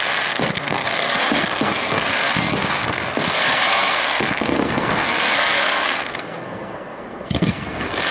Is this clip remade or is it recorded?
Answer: remade